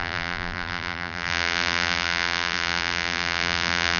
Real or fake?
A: fake